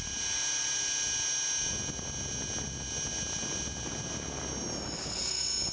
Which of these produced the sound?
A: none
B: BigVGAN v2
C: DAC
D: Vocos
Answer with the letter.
A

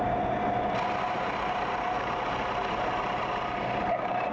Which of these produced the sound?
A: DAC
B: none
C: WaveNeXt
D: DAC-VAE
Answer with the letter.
B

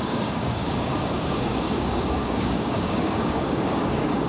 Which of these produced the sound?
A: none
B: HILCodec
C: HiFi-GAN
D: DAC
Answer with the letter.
D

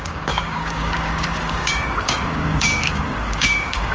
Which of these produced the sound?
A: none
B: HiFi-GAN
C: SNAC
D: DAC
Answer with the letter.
D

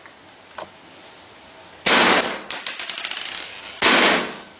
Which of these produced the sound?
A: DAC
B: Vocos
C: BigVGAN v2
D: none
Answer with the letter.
D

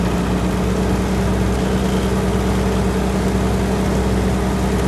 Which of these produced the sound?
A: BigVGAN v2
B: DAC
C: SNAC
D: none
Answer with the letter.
D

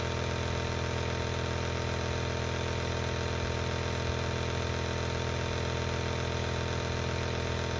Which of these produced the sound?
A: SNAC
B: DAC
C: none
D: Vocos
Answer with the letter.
C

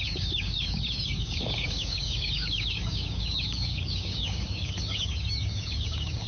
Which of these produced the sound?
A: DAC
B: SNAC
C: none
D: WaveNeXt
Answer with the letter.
A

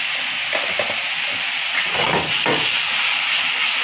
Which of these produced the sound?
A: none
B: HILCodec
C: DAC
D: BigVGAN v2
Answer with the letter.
A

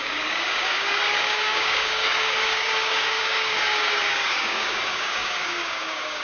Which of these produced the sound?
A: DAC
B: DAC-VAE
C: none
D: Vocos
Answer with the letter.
A